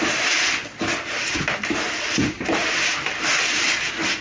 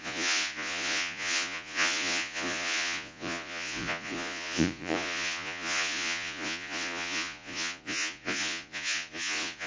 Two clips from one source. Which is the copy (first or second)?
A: second